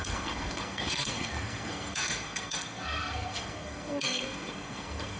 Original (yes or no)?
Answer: no